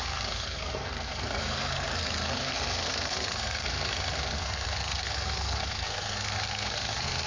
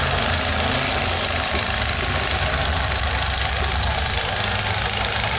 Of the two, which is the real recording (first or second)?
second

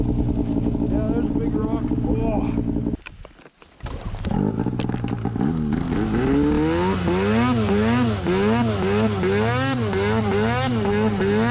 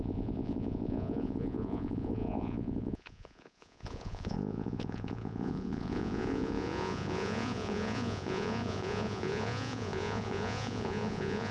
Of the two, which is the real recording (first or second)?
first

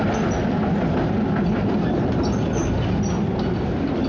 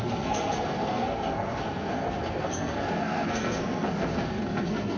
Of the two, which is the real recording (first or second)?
first